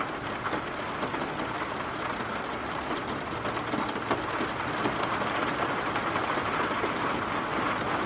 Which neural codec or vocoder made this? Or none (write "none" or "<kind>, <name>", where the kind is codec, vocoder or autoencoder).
none